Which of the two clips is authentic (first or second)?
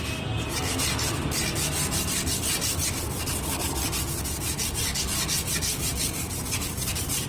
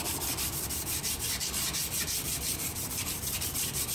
first